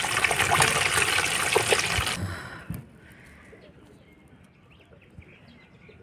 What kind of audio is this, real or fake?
real